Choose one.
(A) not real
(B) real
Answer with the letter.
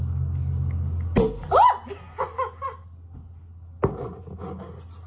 B